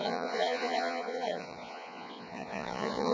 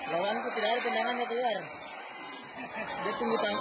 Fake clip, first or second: first